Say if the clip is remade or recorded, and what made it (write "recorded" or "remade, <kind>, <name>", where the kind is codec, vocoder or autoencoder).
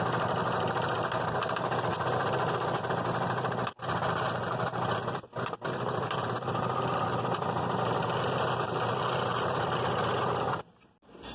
recorded